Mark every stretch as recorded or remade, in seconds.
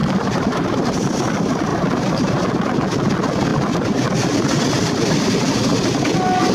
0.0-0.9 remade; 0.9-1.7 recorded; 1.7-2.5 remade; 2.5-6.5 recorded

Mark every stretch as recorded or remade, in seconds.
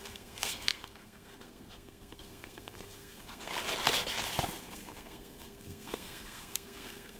0.0-3.5 remade; 3.5-4.6 recorded; 4.6-7.2 remade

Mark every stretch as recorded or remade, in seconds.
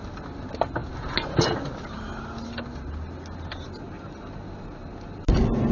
0.0-5.7 recorded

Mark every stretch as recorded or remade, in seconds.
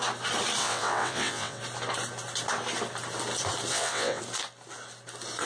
0.0-0.6 recorded; 0.6-1.6 remade; 1.6-3.7 recorded; 3.7-4.2 remade; 4.2-5.5 recorded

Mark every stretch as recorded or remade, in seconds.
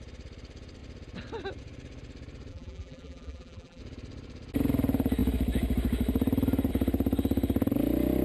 0.0-2.5 recorded; 2.5-3.8 remade; 3.8-8.2 recorded